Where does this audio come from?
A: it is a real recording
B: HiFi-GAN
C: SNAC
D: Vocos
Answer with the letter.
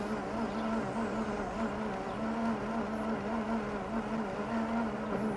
A